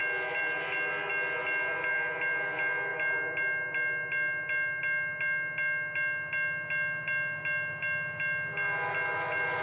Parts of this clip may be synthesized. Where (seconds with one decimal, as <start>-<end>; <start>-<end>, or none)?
none